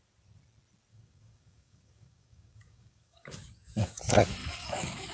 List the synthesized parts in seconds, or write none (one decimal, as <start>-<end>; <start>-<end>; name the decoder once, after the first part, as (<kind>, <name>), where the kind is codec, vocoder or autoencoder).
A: 0.9-4.0 (codec, DAC); 4.4-5.1